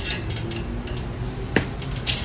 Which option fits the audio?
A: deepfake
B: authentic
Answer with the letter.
B